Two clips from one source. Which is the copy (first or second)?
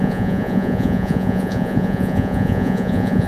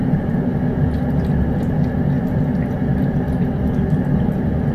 first